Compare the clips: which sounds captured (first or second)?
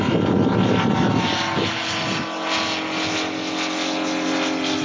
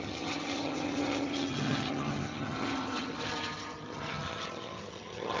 first